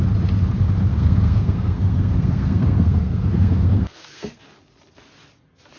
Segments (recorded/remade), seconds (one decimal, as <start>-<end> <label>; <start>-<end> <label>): 0.0-0.9 recorded; 0.9-4.4 remade; 4.4-5.8 recorded